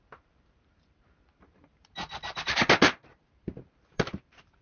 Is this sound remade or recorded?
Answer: remade